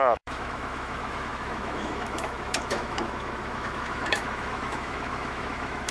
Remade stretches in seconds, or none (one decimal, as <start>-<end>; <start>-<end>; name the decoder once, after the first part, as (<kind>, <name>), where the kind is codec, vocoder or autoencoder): 0.0-5.9 (autoencoder, DAC-VAE)